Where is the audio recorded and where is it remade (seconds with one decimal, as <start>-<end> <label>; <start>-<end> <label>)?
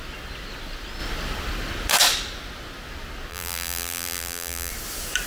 0.0-3.3 recorded; 3.3-4.7 remade; 4.7-5.3 recorded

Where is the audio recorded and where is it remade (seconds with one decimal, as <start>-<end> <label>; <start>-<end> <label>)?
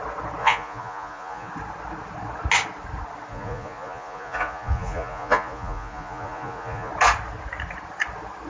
0.0-0.4 recorded; 0.4-1.5 remade; 1.5-3.3 recorded; 3.3-6.9 remade; 6.9-8.5 recorded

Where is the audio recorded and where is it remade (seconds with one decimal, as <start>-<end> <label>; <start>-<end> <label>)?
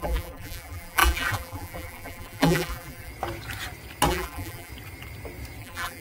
0.0-3.1 remade; 3.1-4.1 recorded; 4.1-4.7 remade; 4.7-5.6 recorded; 5.6-6.0 remade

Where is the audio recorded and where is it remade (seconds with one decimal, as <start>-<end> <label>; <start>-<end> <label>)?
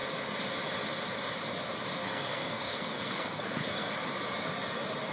0.0-2.0 recorded; 2.0-3.9 remade; 3.9-5.1 recorded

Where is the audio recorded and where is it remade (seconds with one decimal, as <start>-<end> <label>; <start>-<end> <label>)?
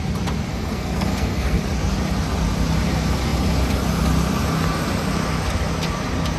0.0-0.5 recorded; 0.5-1.6 remade; 1.6-6.4 recorded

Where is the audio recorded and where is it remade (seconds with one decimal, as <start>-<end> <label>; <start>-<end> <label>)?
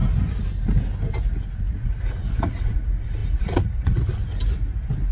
0.0-1.7 recorded; 1.7-4.2 remade; 4.2-5.1 recorded